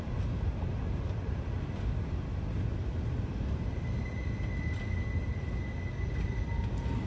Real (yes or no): yes